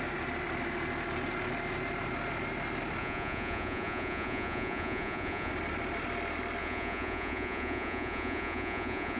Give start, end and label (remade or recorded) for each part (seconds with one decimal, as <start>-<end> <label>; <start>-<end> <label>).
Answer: 0.0-3.0 recorded; 3.0-5.5 remade; 5.5-6.6 recorded; 6.6-9.2 remade